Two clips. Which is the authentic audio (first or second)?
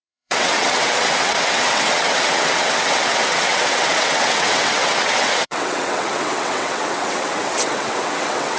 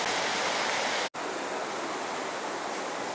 second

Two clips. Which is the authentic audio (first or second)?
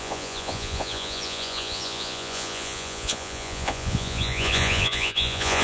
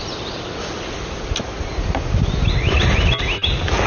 second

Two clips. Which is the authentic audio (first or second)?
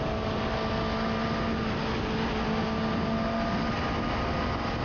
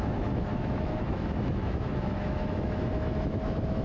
first